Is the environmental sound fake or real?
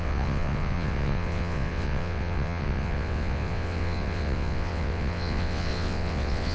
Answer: fake